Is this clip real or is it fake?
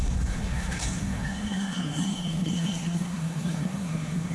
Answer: fake